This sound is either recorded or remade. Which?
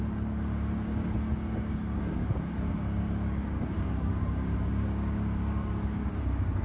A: remade